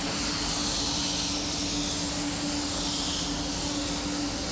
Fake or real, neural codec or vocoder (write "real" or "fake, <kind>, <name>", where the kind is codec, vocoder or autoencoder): real